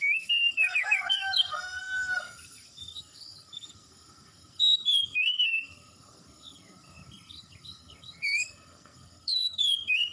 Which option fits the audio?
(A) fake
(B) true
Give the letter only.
A